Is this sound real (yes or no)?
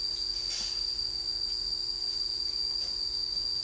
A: yes